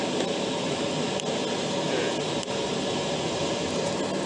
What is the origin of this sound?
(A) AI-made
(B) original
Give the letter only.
B